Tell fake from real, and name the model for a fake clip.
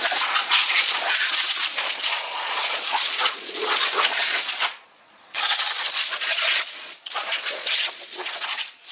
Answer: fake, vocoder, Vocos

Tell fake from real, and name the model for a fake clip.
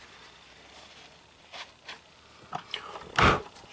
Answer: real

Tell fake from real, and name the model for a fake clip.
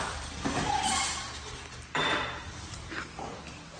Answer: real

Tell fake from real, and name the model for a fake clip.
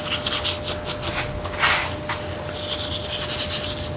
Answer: real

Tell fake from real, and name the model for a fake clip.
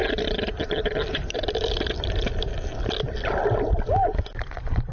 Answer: real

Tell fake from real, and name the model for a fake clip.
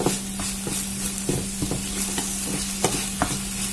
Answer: real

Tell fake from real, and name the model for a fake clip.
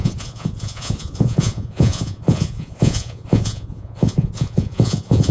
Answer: fake, vocoder, Vocos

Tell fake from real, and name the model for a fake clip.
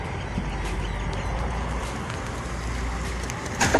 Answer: real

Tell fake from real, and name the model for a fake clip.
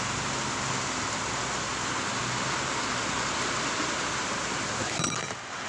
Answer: real